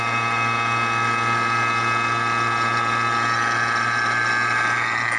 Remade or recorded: recorded